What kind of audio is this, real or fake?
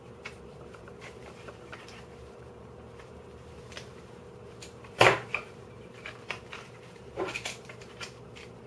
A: fake